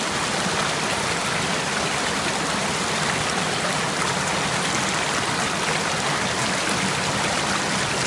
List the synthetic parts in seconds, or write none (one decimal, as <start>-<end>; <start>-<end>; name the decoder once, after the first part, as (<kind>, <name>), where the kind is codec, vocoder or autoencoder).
none